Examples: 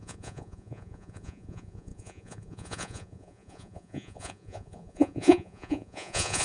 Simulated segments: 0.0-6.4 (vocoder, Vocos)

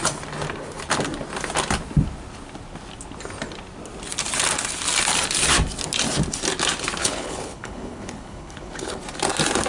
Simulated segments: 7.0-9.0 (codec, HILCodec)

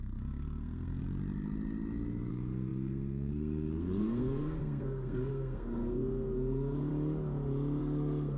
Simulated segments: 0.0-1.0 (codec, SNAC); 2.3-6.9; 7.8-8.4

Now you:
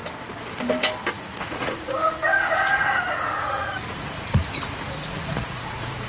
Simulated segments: 1.1-6.1 (vocoder, Vocos)